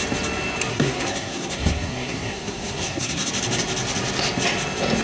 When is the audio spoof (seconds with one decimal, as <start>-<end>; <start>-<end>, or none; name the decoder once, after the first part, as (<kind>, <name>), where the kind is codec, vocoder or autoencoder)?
0.7-3.3 (codec, SNAC)